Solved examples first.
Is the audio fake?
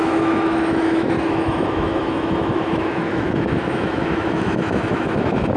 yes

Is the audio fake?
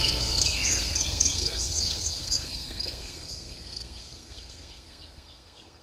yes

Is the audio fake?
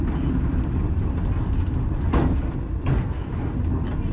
no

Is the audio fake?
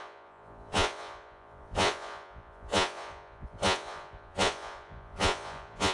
yes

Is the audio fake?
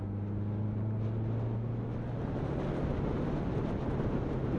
no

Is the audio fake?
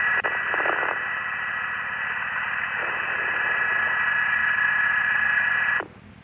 no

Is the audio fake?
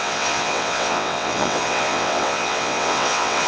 yes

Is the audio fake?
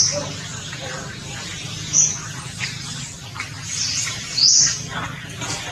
no